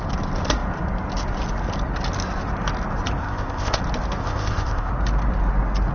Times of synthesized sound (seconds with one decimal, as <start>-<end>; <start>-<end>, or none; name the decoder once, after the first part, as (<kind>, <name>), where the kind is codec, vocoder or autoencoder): 3.2-3.8 (codec, ZipCodec); 4.2-4.9